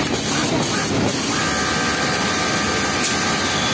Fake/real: real